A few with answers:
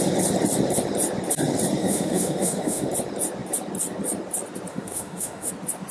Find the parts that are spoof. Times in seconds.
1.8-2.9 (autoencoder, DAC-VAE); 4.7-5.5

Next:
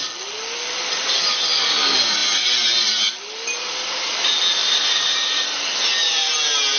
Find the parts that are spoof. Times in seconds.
4.6-6.3 (vocoder, BigVGAN v2)

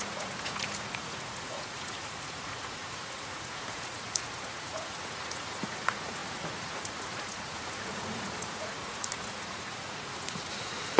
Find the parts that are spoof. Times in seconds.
0.0-11.0 (vocoder, Vocos)

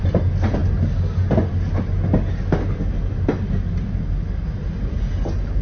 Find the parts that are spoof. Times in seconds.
none

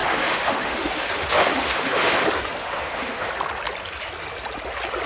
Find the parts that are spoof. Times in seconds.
0.0-2.2 (autoencoder, DAC-VAE); 2.6-3.3

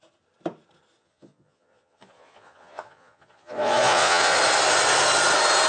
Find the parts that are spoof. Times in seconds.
1.0-4.4 (vocoder, Vocos)

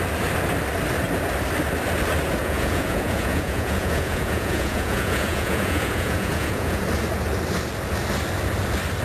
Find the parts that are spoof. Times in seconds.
2.4-6.8 (vocoder, Vocos)